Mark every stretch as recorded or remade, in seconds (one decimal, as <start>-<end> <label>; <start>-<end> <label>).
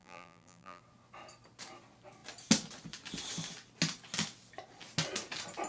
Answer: 0.0-0.8 remade; 0.8-5.7 recorded